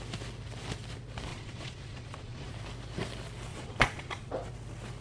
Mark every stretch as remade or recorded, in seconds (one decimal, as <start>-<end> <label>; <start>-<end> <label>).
0.0-1.3 recorded; 1.3-2.5 remade; 2.5-3.5 recorded; 3.5-4.3 remade; 4.3-5.0 recorded